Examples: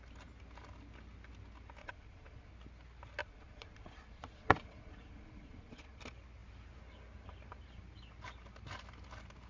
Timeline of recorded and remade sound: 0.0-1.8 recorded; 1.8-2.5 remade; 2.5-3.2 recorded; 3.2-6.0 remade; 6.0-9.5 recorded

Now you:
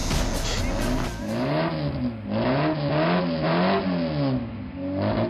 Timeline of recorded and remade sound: 0.0-5.3 recorded